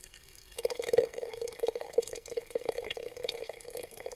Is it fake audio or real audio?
fake